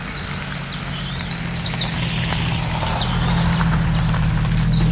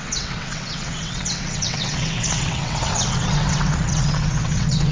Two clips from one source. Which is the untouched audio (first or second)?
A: first